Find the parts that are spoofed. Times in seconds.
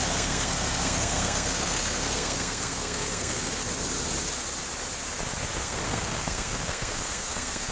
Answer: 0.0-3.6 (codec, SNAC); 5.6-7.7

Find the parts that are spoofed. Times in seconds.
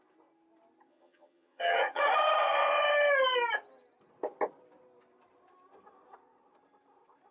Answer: 0.9-2.0 (vocoder, HiFi-GAN)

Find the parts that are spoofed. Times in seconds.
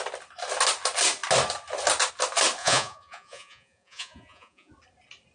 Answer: 2.6-4.7 (vocoder, Vocos)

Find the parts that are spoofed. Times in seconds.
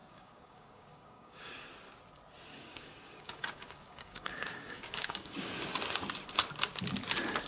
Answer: 0.0-1.5 (codec, DAC); 2.5-5.5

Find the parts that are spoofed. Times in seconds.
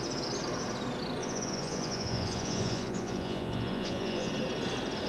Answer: 1.2-4.3 (vocoder, Vocos)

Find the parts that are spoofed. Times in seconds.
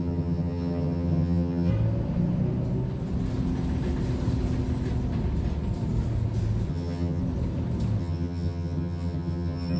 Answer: 0.0-1.7 (vocoder, HiFi-GAN); 6.7-7.2; 8.0-9.8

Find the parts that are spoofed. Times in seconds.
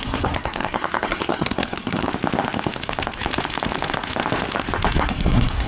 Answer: 0.0-2.1 (codec, SNAC); 5.0-5.7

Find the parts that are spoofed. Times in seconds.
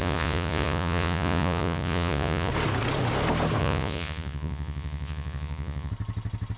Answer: 0.0-2.5 (vocoder, Vocos); 3.6-5.9